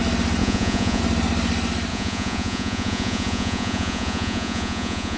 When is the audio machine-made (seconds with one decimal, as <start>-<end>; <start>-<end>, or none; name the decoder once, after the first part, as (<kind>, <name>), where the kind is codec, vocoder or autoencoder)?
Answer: 0.4-1.0 (vocoder, Vocos); 1.9-5.2